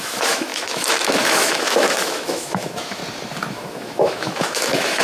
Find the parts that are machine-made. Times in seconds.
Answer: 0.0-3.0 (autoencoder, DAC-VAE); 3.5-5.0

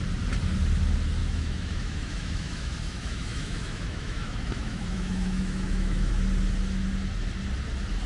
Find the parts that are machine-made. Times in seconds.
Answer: 1.2-6.1 (autoencoder, DAC-VAE)

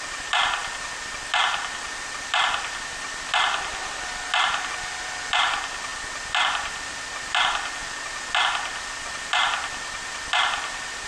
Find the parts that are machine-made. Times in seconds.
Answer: none

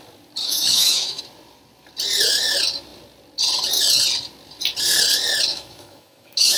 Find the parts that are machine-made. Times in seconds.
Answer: 0.4-1.2 (autoencoder, DAC-VAE); 5.5-6.6

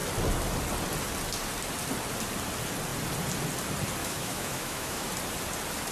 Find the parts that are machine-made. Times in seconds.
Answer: 4.0-5.1 (autoencoder, DAC-VAE)

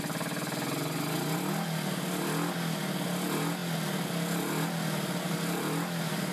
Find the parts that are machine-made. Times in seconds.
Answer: none